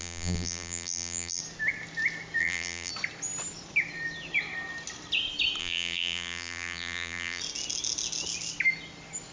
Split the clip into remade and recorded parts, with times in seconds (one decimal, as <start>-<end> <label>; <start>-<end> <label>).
0.0-1.4 remade; 1.4-2.4 recorded; 2.4-2.9 remade; 2.9-5.6 recorded; 5.6-7.4 remade; 7.4-9.3 recorded

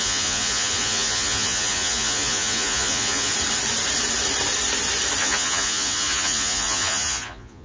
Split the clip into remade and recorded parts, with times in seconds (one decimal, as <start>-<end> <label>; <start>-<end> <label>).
0.0-3.3 remade; 3.3-5.2 recorded; 5.2-7.6 remade

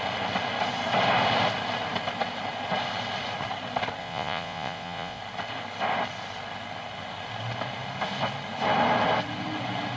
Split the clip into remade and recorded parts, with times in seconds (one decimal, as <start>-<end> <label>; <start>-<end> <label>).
0.0-4.0 recorded; 4.0-5.2 remade; 5.2-10.0 recorded

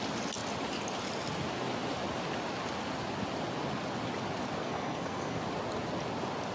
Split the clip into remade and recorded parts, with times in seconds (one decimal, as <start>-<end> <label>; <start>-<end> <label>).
0.0-4.6 recorded; 4.6-5.4 remade; 5.4-6.5 recorded

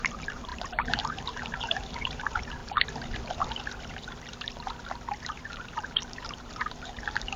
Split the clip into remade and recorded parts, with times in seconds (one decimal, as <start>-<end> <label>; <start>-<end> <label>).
0.0-2.6 remade; 2.6-5.3 recorded; 5.3-7.4 remade

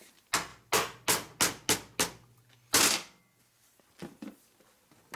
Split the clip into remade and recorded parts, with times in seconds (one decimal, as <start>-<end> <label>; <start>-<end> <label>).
0.0-5.2 recorded

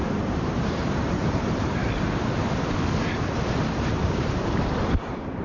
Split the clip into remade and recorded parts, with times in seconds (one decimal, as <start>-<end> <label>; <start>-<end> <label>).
0.0-1.8 remade; 1.8-3.5 recorded; 3.5-5.4 remade

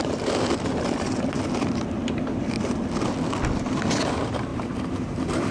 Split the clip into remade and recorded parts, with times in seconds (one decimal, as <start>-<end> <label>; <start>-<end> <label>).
0.0-4.5 recorded; 4.5-5.5 remade